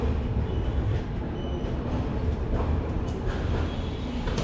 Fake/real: real